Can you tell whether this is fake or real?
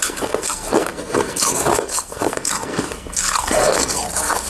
fake